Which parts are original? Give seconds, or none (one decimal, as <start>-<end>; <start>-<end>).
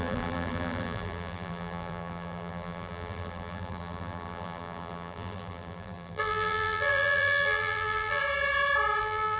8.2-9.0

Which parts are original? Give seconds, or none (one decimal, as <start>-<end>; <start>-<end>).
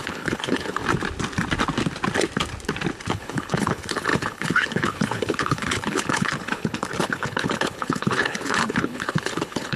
0.8-3.1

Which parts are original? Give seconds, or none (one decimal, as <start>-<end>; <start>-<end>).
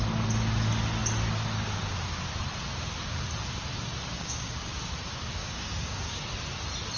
0.0-4.1; 4.8-5.4; 6.2-7.0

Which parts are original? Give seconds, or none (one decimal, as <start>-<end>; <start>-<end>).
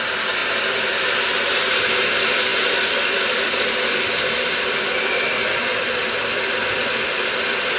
none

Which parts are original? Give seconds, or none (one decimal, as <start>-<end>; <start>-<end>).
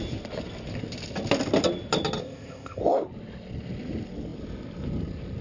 0.0-2.2; 2.8-5.4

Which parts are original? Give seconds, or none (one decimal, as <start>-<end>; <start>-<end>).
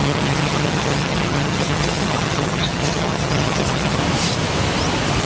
4.0-5.2